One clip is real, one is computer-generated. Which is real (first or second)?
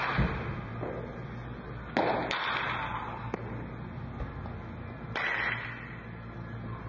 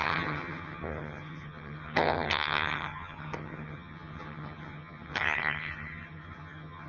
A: first